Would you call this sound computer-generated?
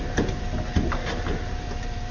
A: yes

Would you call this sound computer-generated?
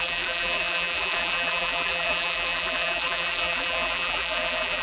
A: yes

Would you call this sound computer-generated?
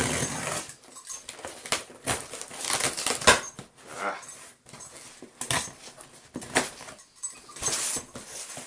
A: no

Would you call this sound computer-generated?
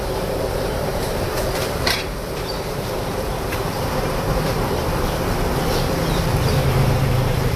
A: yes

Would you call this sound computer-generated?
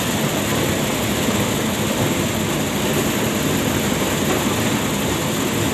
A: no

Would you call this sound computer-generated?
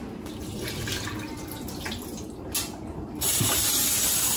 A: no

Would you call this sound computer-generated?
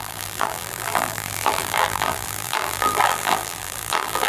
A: yes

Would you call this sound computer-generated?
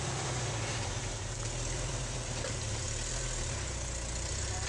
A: yes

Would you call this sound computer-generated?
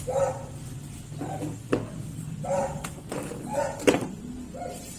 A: yes